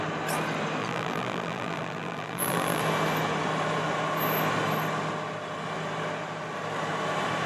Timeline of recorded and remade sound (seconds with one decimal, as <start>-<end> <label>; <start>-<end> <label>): 0.0-0.8 recorded; 0.8-2.8 remade; 2.8-7.5 recorded